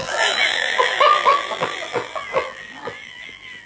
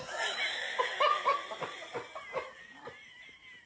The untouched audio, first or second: second